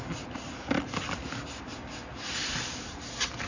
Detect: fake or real real